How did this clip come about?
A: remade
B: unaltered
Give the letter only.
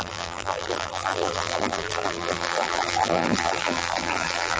A